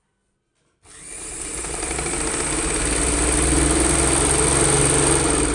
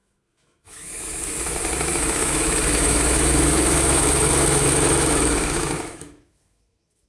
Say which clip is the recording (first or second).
first